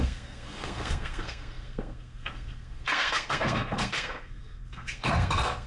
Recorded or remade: remade